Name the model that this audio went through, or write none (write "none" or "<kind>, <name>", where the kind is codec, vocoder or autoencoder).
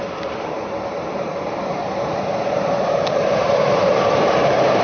vocoder, BigVGAN v2